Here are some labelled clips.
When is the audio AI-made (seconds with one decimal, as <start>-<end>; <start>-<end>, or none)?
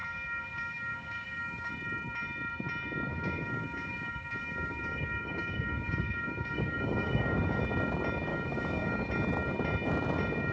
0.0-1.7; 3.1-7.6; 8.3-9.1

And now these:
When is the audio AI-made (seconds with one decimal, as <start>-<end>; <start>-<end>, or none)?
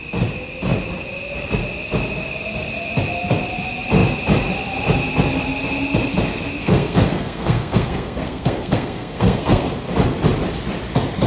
6.6-9.7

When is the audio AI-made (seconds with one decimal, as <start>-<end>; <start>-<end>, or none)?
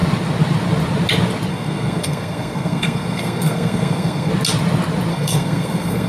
1.5-4.3; 5.1-6.1